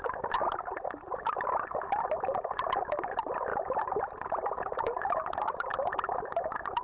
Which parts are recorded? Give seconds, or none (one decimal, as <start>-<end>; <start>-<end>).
0.0-6.8